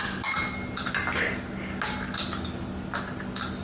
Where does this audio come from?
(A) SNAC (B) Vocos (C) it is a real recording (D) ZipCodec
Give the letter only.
C